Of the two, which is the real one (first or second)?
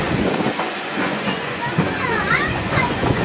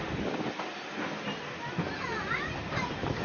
second